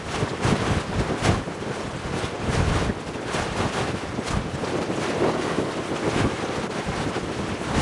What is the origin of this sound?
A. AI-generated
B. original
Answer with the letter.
B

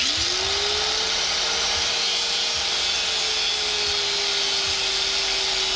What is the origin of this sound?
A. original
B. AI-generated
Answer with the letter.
A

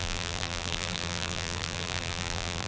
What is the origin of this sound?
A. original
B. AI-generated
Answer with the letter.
B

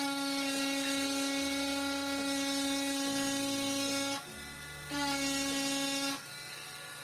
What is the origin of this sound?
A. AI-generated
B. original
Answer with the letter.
B